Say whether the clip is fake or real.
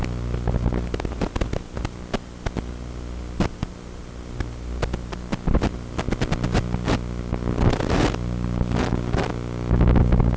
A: real